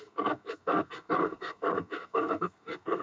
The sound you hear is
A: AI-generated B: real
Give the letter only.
A